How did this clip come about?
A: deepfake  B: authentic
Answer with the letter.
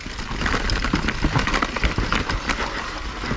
B